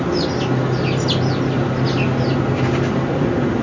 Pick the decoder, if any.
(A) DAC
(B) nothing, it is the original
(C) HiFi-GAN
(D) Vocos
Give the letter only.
B